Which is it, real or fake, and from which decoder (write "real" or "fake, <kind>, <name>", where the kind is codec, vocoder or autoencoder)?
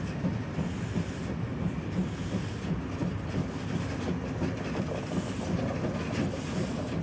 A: real